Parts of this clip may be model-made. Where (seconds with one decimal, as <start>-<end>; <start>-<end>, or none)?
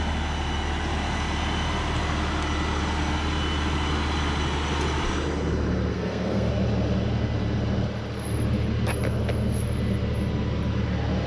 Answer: 5.9-6.5